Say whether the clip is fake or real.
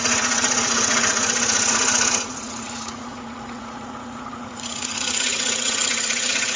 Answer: fake